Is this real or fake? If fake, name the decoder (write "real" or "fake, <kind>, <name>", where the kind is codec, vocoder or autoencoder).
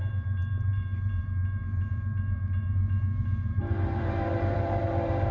fake, vocoder, BigVGAN v2